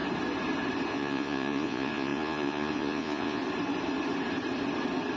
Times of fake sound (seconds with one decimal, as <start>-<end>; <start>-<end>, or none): 0.9-3.4